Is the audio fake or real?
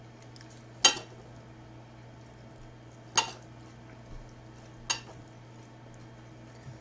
real